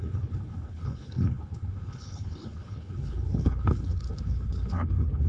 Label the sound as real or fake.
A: fake